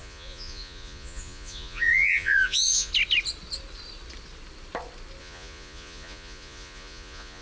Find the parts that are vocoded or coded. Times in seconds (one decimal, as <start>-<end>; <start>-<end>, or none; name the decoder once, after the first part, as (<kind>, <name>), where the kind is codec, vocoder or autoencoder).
0.0-2.9 (vocoder, Vocos); 5.2-7.4